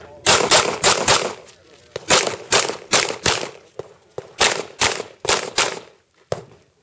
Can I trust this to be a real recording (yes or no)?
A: yes